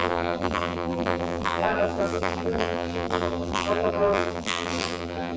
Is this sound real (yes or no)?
no